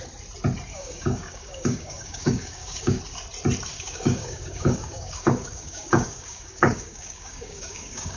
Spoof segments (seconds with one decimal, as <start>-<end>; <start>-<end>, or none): 0.7-3.0; 3.7-8.2